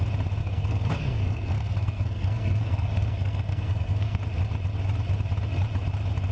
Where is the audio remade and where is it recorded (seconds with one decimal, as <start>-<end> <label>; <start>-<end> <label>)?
0.0-0.4 recorded; 0.4-4.2 remade; 4.2-6.3 recorded